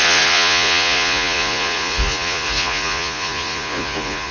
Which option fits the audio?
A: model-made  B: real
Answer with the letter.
A